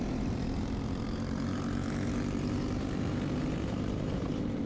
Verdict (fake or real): fake